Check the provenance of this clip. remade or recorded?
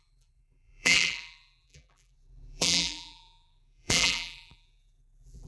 remade